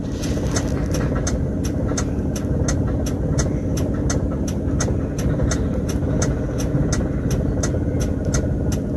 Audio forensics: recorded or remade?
recorded